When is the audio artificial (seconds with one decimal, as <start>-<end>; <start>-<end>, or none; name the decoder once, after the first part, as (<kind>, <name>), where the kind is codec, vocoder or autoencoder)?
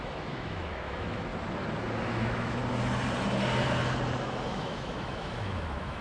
0.0-1.3 (autoencoder, DAC-VAE); 2.1-2.6; 4.5-6.0